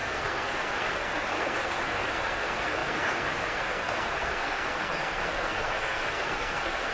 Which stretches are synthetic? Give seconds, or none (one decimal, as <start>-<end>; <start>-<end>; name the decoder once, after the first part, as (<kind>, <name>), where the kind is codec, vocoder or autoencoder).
0.0-6.9 (codec, SNAC)